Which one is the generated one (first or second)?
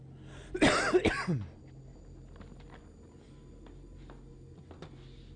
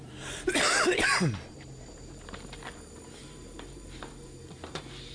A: second